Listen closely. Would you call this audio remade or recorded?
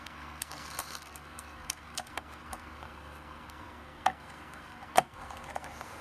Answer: remade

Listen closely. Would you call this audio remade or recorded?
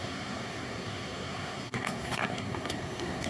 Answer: remade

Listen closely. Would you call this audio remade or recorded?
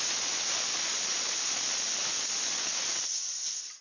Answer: recorded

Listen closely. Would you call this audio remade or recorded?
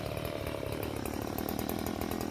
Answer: recorded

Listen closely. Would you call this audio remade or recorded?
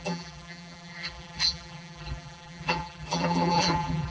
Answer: remade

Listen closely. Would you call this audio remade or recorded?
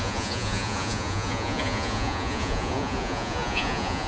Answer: remade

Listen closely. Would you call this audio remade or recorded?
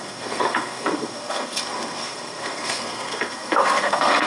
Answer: remade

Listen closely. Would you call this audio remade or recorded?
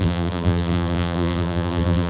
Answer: remade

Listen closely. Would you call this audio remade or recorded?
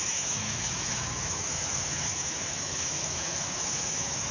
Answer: remade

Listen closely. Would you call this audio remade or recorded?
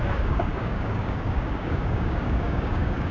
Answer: remade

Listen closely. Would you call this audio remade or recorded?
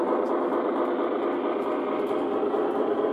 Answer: recorded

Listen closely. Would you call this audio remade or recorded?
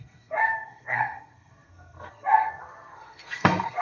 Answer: remade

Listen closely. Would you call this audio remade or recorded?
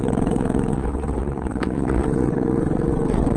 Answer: remade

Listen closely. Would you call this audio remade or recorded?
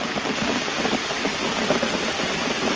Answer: recorded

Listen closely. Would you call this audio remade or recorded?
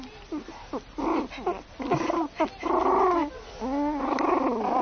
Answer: recorded